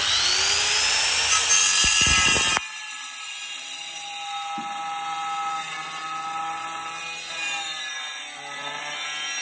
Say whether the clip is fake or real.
real